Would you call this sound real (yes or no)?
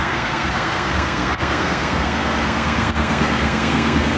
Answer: no